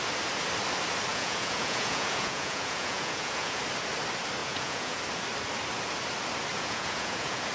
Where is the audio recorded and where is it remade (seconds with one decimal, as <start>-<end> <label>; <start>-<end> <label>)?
0.0-1.1 recorded; 1.1-3.6 remade; 3.6-4.4 recorded; 4.4-5.0 remade; 5.0-6.5 recorded; 6.5-7.5 remade